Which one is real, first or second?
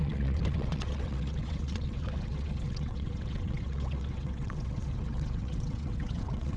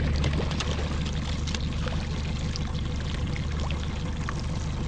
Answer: second